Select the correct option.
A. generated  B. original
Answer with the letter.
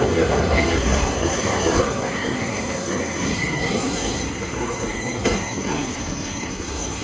A